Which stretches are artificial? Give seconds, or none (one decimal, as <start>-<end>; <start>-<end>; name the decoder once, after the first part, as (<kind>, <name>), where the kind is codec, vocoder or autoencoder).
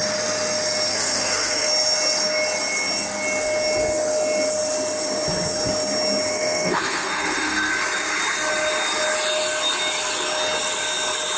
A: 0.9-1.7 (codec, SNAC); 6.3-7.7